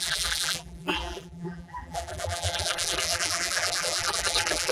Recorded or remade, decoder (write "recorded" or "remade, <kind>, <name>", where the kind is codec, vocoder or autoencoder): remade, vocoder, BigVGAN v2